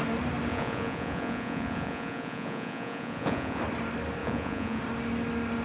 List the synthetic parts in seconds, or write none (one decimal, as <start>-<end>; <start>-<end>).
0.5-3.6; 4.2-4.8